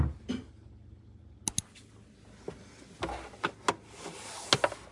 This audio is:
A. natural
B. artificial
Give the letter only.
A